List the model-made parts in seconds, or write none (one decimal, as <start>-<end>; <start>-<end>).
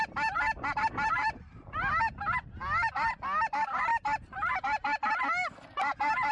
none